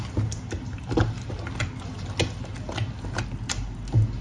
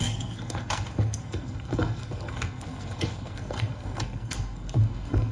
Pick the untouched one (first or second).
first